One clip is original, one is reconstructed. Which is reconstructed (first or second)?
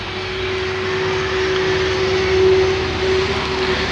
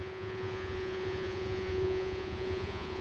second